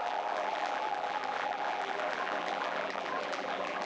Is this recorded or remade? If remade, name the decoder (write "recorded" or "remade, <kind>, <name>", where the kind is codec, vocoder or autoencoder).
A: remade, vocoder, BigVGAN v2